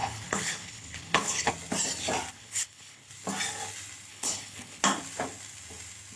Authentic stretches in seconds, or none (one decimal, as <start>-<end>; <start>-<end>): 1.5-2.3; 3.1-4.1; 4.8-6.2